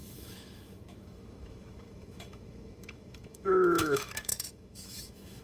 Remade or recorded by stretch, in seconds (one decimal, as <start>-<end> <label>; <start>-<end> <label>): 0.0-5.4 remade